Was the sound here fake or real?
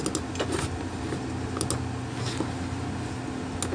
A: real